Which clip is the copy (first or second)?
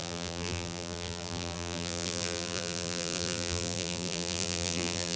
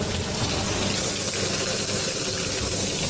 first